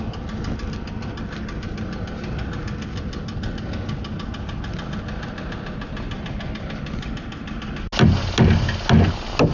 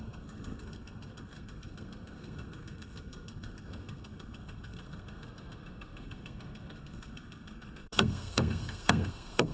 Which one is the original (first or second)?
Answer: first